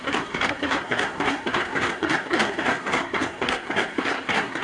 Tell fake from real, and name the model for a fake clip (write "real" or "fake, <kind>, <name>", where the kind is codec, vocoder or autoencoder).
fake, codec, SNAC